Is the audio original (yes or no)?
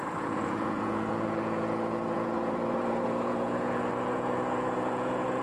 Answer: no